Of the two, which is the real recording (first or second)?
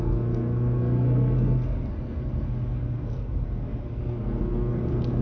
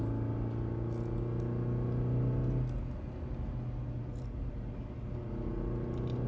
second